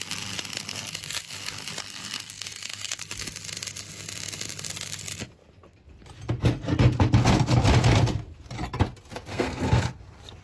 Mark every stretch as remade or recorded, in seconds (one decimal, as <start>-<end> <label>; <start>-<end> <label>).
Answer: 0.0-1.8 recorded; 1.8-3.0 remade; 3.0-9.3 recorded; 9.3-9.9 remade; 9.9-10.4 recorded